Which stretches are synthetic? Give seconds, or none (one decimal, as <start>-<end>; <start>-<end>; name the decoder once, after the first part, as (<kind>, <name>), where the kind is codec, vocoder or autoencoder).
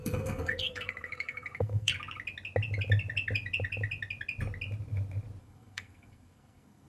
0.0-1.9 (codec, SNAC); 5.4-6.9